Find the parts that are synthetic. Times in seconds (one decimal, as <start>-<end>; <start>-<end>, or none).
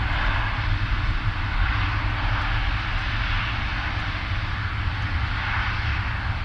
none